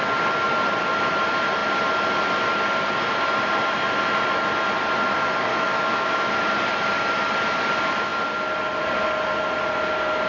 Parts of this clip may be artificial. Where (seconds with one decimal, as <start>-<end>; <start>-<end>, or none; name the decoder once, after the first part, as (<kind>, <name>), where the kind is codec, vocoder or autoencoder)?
5.5-6.3 (autoencoder, DAC-VAE)